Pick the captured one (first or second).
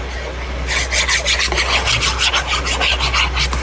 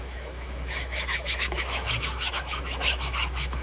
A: first